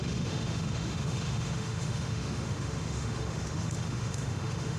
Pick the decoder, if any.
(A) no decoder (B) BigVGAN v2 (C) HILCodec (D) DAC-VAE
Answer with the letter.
D